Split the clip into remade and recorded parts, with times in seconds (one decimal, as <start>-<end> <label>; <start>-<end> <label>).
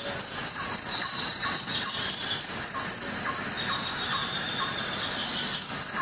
0.0-0.4 recorded; 0.4-3.4 remade; 3.4-4.2 recorded; 4.2-5.1 remade; 5.1-6.0 recorded